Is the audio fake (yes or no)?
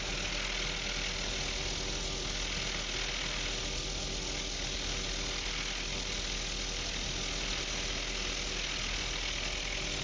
no